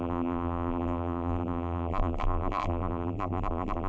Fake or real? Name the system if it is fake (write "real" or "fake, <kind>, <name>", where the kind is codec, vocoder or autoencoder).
fake, vocoder, BigVGAN v2